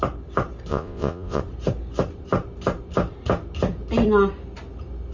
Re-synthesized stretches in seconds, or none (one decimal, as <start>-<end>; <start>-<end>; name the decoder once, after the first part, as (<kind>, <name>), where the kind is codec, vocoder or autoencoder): 0.7-1.4 (vocoder, Vocos)